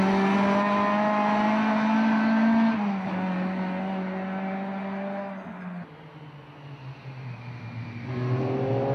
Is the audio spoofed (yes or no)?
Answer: no